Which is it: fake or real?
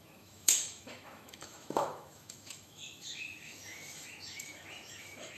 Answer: fake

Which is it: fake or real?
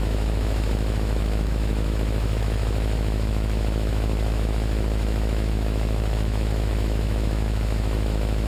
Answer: fake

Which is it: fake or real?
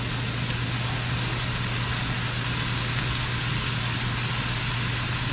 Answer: real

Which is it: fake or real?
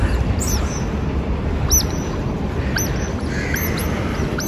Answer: real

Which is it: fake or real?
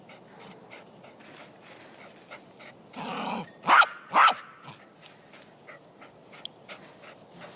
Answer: real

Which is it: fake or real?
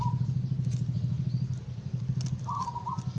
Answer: real